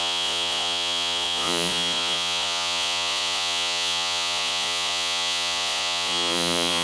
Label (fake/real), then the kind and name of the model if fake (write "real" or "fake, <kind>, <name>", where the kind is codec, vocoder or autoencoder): fake, vocoder, Vocos